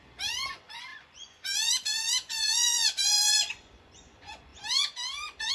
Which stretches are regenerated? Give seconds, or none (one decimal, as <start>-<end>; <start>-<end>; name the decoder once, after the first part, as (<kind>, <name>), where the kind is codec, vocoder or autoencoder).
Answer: 0.0-5.5 (vocoder, Vocos)